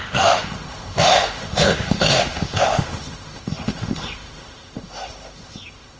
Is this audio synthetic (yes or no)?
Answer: yes